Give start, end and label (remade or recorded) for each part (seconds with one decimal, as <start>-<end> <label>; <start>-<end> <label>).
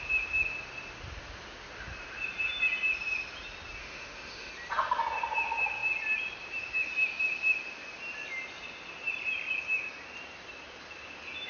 0.0-3.8 recorded; 3.8-4.5 remade; 4.5-11.5 recorded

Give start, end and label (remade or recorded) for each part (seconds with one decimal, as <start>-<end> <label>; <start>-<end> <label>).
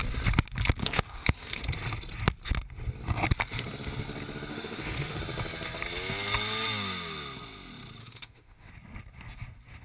0.0-0.8 recorded; 0.8-1.6 remade; 1.6-4.5 recorded; 4.5-5.2 remade; 5.2-8.0 recorded; 8.0-8.7 remade; 8.7-9.8 recorded